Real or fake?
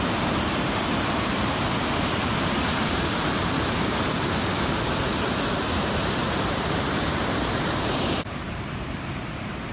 fake